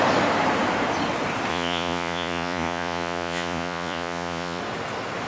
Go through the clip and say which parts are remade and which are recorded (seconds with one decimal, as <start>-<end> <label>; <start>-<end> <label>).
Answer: 0.0-1.5 recorded; 1.5-4.6 remade; 4.6-5.3 recorded